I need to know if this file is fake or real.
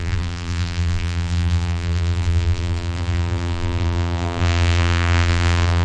fake